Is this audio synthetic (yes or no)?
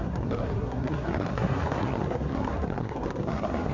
yes